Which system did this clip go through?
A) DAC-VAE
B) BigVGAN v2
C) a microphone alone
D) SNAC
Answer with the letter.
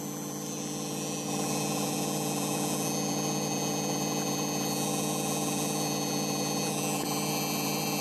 C